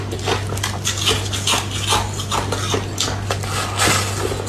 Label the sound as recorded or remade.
recorded